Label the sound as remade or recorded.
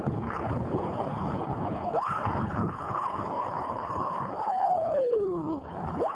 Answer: remade